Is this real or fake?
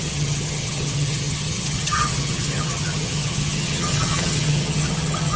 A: fake